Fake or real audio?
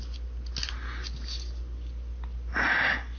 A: real